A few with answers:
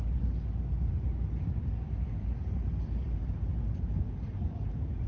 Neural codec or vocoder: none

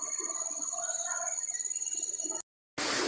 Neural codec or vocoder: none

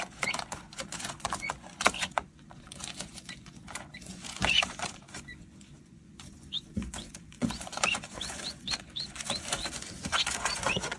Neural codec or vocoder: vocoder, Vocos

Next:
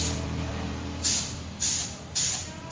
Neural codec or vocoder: none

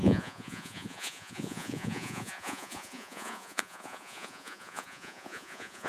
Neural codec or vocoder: vocoder, Vocos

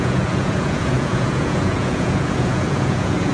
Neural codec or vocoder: vocoder, Vocos